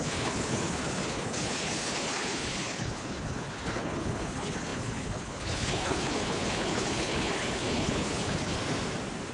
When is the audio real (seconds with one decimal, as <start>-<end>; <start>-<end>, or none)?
8.6-9.3